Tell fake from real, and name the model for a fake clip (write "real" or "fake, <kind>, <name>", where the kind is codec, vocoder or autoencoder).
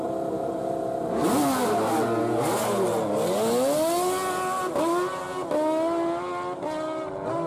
real